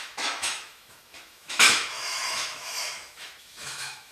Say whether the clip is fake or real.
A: fake